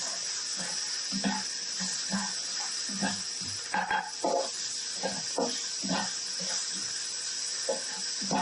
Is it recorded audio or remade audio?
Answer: recorded